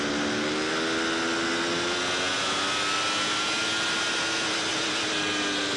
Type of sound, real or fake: real